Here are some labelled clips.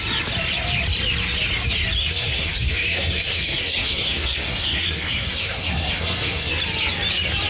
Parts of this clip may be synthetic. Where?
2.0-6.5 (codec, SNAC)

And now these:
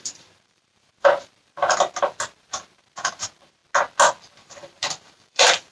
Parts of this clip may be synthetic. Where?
0.0-1.6 (vocoder, BigVGAN v2); 2.4-3.6; 4.3-5.7

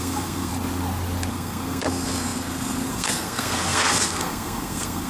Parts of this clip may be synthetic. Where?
0.0-0.5 (codec, SNAC); 1.3-5.1

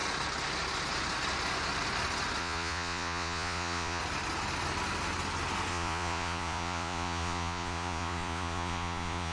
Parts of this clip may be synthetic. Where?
2.4-4.0 (vocoder, Vocos); 5.7-9.3

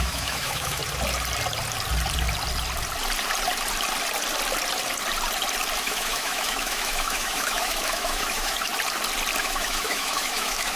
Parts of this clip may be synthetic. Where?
0.0-0.8 (autoencoder, DAC-VAE); 5.8-8.7; 9.4-10.8

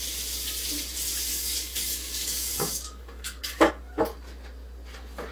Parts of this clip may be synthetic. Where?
1.3-3.7 (codec, DAC)